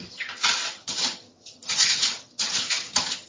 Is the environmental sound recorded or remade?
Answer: remade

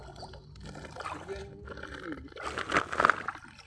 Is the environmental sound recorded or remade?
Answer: recorded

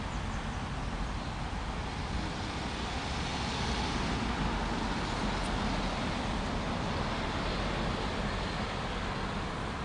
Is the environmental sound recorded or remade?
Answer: recorded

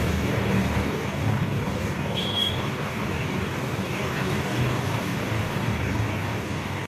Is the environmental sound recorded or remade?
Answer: remade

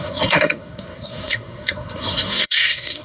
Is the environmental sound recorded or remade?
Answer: remade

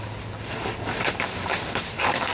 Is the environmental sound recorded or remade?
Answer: recorded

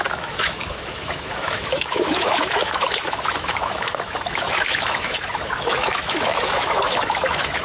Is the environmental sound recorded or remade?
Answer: remade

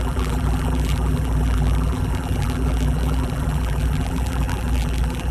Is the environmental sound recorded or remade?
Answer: remade